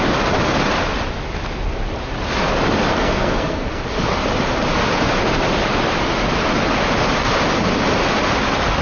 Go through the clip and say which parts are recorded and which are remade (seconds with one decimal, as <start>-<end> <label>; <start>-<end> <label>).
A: 0.0-2.9 recorded; 2.9-3.8 remade; 3.8-8.8 recorded